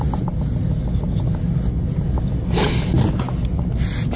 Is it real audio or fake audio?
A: real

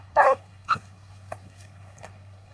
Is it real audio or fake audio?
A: fake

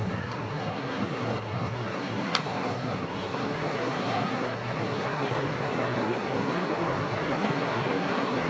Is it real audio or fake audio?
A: fake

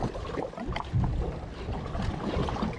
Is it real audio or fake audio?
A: real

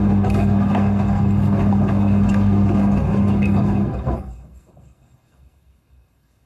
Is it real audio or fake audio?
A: fake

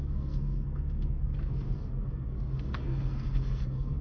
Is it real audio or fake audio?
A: fake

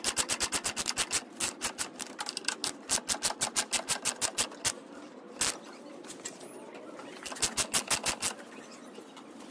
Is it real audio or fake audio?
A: real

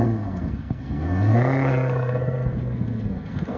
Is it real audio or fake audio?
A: fake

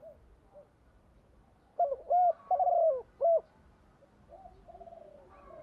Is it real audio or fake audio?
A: real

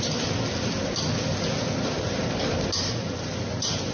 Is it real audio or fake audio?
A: real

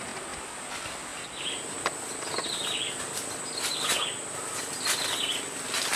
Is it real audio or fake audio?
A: real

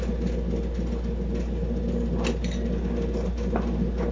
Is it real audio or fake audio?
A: real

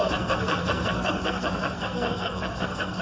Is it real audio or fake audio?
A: fake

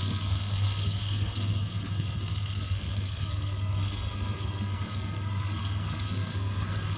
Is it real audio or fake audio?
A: fake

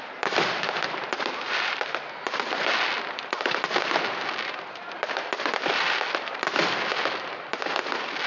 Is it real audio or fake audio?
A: real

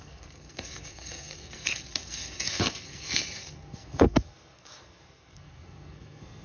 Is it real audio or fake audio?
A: fake